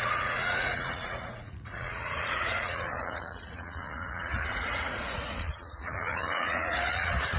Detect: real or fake fake